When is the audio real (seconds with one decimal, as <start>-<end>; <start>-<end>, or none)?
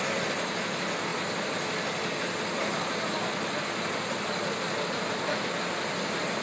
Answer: 0.0-6.4